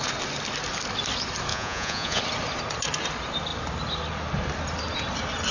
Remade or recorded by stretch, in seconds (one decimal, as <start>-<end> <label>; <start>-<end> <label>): 0.0-1.5 recorded; 1.5-2.2 remade; 2.2-5.5 recorded